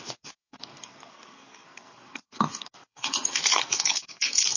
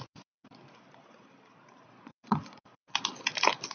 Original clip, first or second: second